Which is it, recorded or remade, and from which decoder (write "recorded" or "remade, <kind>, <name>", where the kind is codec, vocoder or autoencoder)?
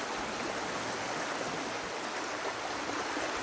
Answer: recorded